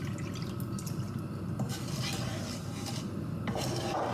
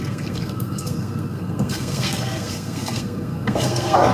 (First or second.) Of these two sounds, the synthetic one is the second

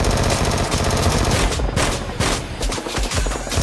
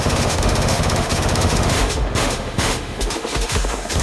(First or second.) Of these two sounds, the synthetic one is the second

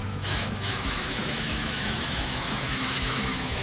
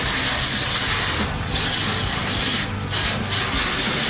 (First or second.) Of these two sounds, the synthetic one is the first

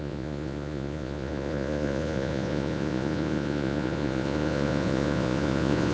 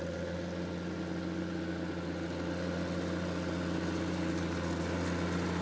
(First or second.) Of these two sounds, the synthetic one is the first